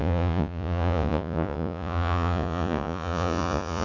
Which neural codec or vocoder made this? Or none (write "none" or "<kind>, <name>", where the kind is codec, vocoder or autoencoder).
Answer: vocoder, Vocos